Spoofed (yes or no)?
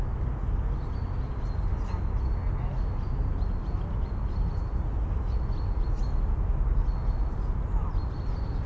no